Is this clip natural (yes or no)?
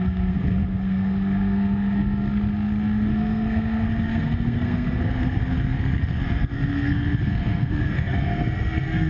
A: no